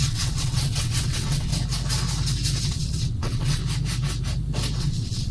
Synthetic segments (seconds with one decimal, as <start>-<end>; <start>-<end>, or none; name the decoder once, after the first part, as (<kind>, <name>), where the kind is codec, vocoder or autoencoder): 0.0-1.5 (vocoder, WaveNeXt); 2.6-3.6; 4.8-5.3